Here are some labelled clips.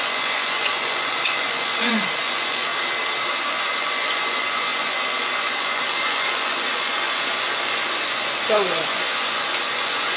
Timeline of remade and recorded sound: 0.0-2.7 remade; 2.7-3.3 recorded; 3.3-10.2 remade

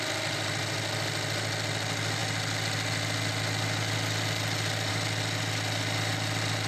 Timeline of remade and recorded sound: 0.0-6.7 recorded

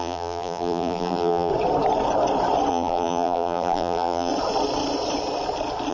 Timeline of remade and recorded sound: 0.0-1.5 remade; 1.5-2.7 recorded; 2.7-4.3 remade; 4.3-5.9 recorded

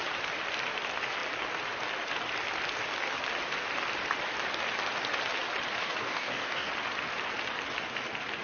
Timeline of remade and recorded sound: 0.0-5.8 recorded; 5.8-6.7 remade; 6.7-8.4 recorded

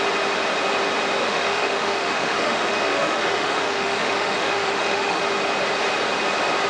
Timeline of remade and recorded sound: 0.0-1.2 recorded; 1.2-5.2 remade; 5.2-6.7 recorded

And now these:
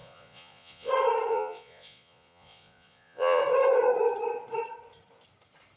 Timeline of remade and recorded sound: 0.0-0.9 remade; 0.9-1.3 recorded; 1.3-3.4 remade; 3.4-5.8 recorded

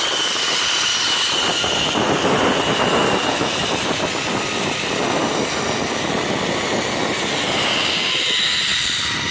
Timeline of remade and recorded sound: 0.0-8.7 recorded; 8.7-9.3 remade

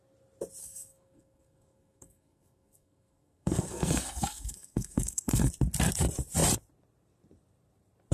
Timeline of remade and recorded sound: 0.0-0.6 recorded; 0.6-5.5 remade; 5.5-8.1 recorded